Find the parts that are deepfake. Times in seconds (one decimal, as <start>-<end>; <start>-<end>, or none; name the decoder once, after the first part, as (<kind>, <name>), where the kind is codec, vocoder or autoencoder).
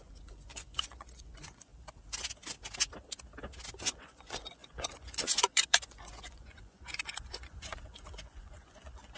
0.0-1.7 (vocoder, Vocos); 3.7-9.2